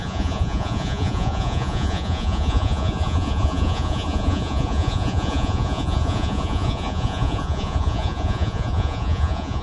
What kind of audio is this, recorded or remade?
remade